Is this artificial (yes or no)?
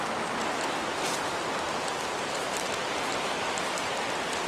no